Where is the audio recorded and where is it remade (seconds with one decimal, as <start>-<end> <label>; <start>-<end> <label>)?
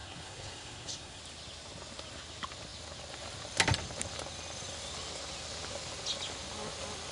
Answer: 0.0-1.2 remade; 1.2-7.1 recorded